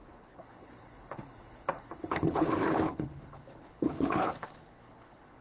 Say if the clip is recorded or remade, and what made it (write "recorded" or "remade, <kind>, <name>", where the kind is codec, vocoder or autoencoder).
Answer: remade, codec, HILCodec